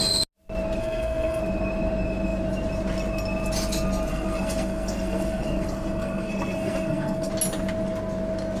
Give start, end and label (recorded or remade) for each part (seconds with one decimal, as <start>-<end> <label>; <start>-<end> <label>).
0.0-0.8 recorded; 0.8-1.4 remade; 1.4-4.1 recorded; 4.1-7.3 remade; 7.3-8.6 recorded